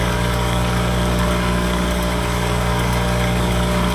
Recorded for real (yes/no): no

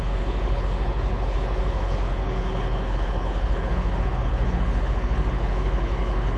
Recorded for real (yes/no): no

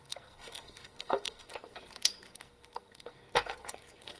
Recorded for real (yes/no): no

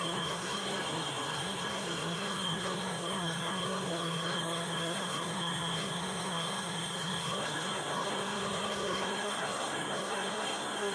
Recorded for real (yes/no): no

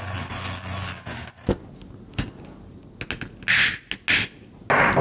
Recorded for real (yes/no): yes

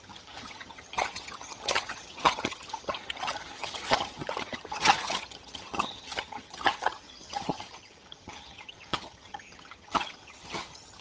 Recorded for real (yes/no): no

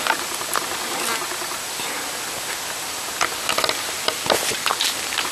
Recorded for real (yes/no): yes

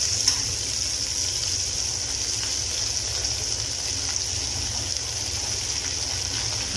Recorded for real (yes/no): yes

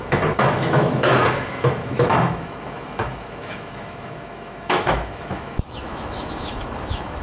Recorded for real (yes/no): no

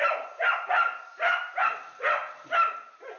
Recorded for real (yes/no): yes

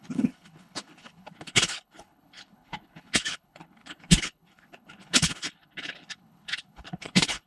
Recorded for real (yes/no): no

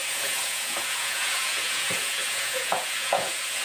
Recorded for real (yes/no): no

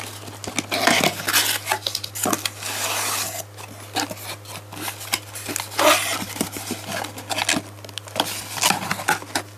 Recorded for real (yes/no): yes